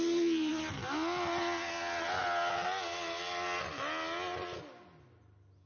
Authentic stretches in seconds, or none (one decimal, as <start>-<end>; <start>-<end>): 0.0-5.7